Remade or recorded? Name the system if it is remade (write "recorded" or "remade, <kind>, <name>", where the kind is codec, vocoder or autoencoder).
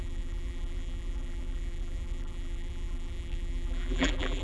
remade, vocoder, BigVGAN v2